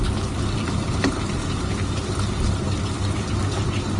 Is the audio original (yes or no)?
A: yes